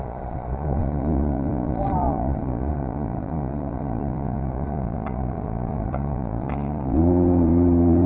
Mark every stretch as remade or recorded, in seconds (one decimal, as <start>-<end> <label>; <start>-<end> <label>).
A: 0.0-8.1 remade